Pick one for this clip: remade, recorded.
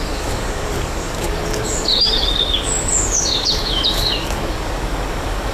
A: remade